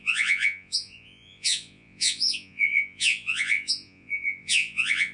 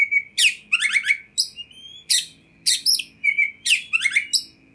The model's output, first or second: first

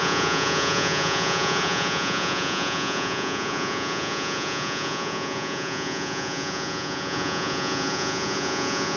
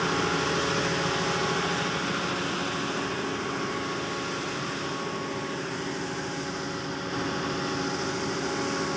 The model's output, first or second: first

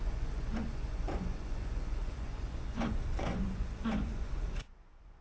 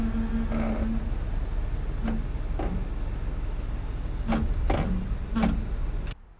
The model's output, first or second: first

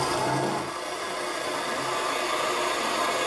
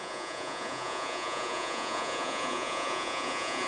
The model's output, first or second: second